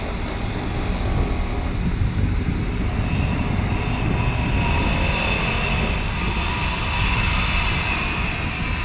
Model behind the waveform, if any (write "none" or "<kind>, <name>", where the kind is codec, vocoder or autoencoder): none